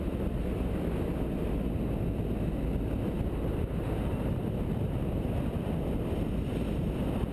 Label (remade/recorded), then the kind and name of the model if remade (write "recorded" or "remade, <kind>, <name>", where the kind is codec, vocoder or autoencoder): recorded